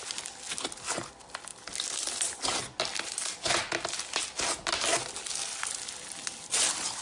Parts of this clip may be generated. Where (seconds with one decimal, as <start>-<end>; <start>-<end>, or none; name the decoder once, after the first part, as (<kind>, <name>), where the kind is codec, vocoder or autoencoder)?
none